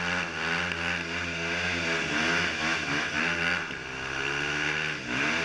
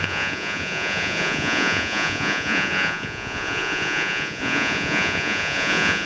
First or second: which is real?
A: first